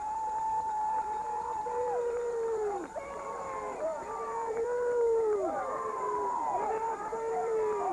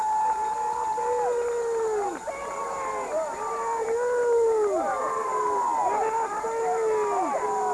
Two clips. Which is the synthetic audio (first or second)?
first